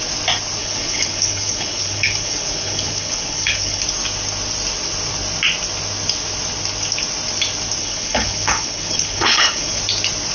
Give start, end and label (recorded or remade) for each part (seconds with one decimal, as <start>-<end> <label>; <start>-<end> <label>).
0.0-0.6 recorded; 0.6-3.8 remade; 3.8-7.8 recorded; 7.8-9.8 remade; 9.8-10.3 recorded